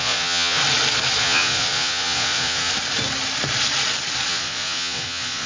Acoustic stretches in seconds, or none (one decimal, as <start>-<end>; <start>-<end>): 0.6-1.2; 2.7-4.3